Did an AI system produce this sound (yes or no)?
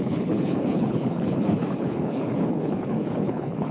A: yes